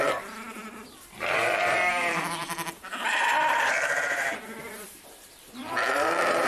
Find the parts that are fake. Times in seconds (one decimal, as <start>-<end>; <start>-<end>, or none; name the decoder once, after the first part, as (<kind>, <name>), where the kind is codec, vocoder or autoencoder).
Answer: 0.0-6.5 (vocoder, BigVGAN v2)